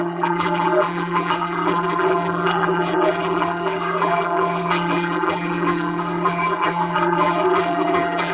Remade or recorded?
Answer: remade